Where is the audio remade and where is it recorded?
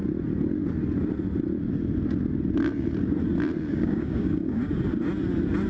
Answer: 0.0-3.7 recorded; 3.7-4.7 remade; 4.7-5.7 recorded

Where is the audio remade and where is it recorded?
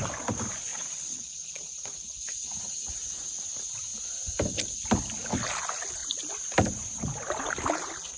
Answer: 0.0-0.7 recorded; 0.7-2.5 remade; 2.5-8.2 recorded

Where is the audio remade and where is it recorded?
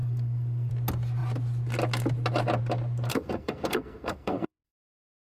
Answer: 0.0-0.7 remade; 0.7-3.1 recorded; 3.1-5.3 remade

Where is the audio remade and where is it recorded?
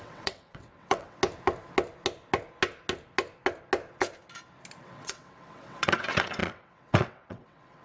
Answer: 0.0-1.2 remade; 1.2-4.8 recorded; 4.8-7.8 remade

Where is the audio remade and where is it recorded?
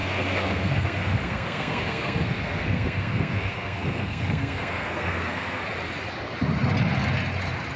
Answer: 0.0-5.6 remade; 5.6-7.8 recorded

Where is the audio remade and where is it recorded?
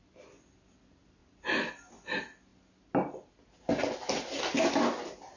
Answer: 0.0-5.4 recorded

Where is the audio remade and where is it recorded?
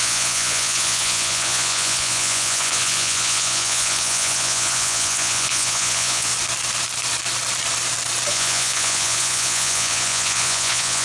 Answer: 0.0-6.3 remade; 6.3-8.3 recorded; 8.3-11.0 remade